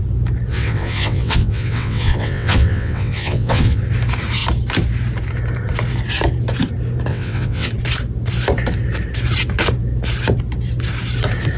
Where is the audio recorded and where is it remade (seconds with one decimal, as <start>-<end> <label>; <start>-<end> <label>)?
0.0-0.5 recorded; 0.5-3.8 remade; 3.8-7.1 recorded; 7.1-7.7 remade; 7.7-11.6 recorded